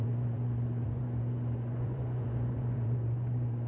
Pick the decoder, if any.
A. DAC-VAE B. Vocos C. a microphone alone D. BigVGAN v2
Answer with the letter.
B